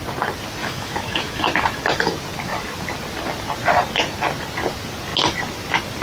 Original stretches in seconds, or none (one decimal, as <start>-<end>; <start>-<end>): 0.0-0.6; 1.4-6.0